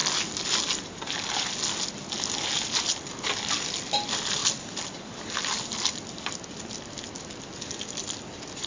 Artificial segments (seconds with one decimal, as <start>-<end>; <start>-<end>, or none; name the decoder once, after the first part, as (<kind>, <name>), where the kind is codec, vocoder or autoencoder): none